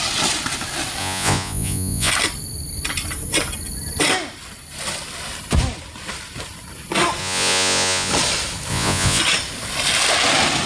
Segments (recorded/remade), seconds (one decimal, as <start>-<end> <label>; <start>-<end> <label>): 0.0-1.0 recorded; 1.0-2.1 remade; 2.1-7.2 recorded; 7.2-8.1 remade; 8.1-8.7 recorded; 8.7-9.2 remade; 9.2-10.7 recorded